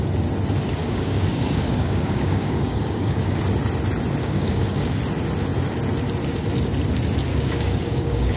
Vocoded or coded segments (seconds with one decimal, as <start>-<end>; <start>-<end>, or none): 0.8-3.4; 4.2-5.0; 7.3-8.4

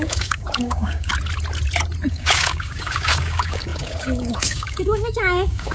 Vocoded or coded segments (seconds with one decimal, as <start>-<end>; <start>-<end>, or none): 0.0-1.1; 2.1-5.7

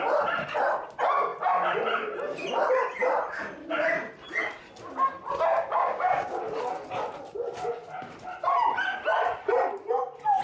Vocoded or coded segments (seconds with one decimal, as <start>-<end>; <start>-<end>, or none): 5.7-6.4

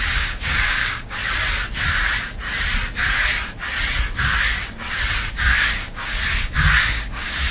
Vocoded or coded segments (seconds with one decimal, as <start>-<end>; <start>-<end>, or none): 0.0-1.2; 5.3-7.5

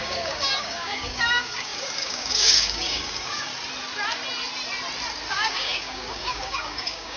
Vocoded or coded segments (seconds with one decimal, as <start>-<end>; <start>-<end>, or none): 0.0-3.5; 5.3-7.2

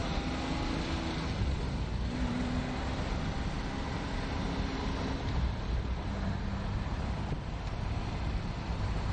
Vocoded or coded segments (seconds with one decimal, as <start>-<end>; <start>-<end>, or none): none